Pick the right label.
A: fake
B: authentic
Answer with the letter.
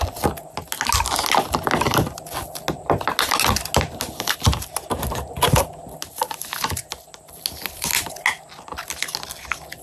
B